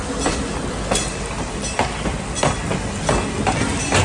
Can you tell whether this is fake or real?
real